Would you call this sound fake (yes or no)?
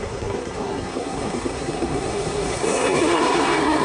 yes